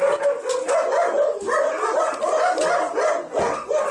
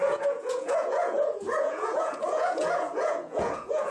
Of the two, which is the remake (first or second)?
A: second